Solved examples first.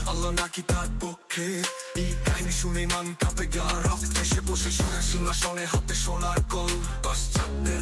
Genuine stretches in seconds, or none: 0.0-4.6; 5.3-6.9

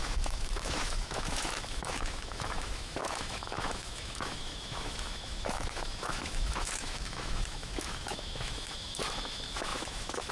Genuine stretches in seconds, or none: none

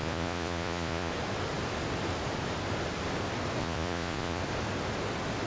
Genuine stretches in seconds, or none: 1.1-3.6; 4.4-5.5